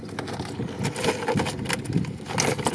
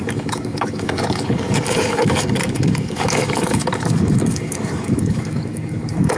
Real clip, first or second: first